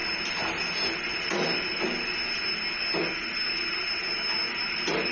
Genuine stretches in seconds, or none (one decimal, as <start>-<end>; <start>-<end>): 0.0-5.1